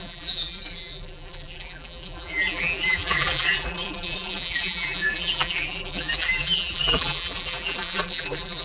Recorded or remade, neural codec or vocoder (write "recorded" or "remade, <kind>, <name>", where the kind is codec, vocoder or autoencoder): remade, vocoder, BigVGAN v2